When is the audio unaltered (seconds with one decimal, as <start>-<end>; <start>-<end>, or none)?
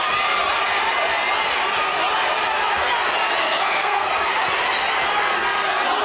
0.0-3.4; 4.1-6.0